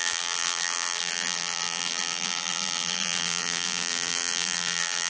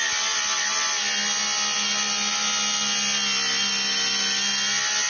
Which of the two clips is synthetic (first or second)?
first